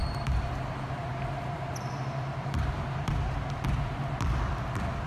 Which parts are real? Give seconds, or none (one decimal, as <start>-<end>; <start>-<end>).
3.1-5.1